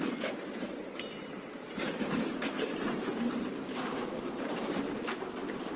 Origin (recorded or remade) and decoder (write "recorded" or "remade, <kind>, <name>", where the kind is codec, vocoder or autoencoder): remade, vocoder, BigVGAN v2